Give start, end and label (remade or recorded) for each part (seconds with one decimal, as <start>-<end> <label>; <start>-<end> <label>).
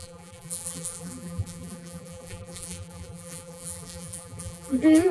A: 0.0-5.1 remade